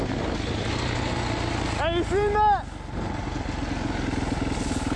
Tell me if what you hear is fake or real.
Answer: real